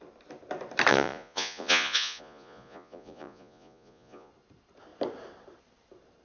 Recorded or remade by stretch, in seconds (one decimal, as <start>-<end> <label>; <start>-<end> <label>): 0.0-0.9 recorded; 0.9-4.3 remade; 4.3-6.2 recorded